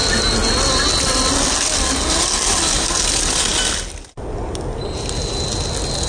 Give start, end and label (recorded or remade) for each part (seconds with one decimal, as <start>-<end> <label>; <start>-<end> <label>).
0.0-6.1 recorded